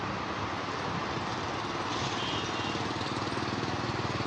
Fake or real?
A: real